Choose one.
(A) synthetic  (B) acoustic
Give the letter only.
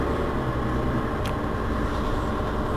B